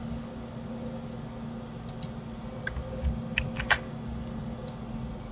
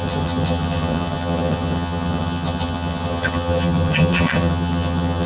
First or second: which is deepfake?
second